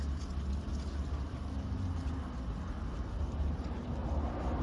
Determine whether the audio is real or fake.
real